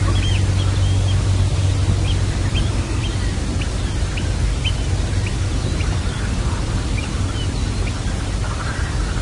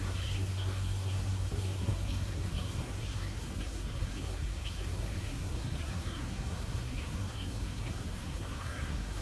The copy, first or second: second